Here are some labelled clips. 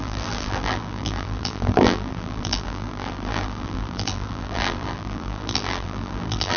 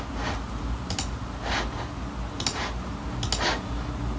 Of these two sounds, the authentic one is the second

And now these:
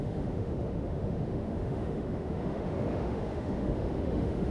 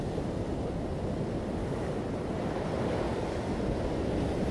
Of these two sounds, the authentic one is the second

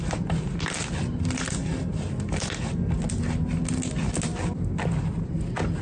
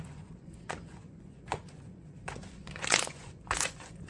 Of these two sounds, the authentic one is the first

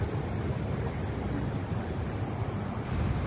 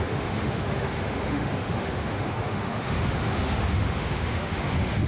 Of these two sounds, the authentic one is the first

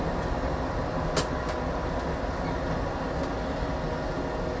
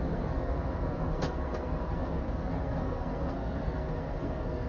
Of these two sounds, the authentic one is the first